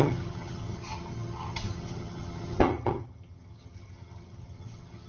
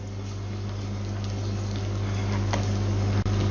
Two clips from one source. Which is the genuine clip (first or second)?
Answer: second